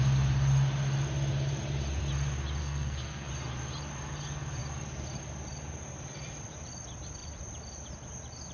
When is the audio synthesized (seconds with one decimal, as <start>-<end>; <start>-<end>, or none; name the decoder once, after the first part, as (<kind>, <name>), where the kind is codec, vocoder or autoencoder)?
2.6-3.3 (codec, SNAC)